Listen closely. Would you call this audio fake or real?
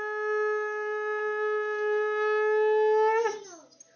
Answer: real